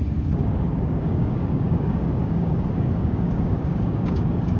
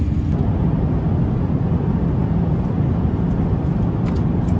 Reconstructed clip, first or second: first